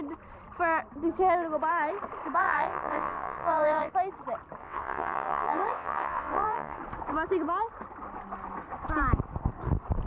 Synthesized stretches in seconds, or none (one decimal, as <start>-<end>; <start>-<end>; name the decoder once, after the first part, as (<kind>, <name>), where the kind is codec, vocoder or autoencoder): 2.4-3.9 (vocoder, WaveNeXt); 4.6-6.8